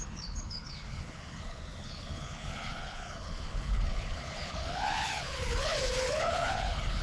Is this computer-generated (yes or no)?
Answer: yes